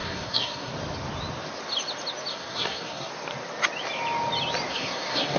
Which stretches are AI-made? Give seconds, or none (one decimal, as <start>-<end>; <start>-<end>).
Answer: 0.0-0.7; 2.3-3.1; 4.7-5.4